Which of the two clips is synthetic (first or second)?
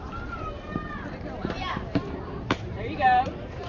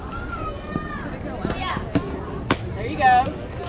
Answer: first